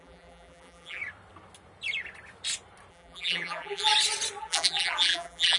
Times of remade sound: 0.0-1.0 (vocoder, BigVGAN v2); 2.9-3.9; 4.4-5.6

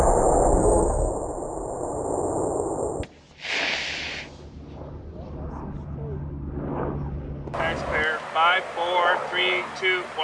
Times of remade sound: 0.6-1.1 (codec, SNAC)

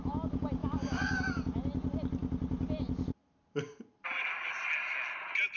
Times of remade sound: 0.6-1.2 (codec, DAC)

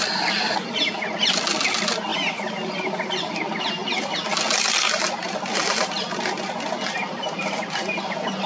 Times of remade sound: none